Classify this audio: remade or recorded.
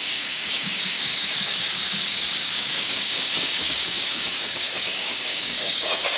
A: remade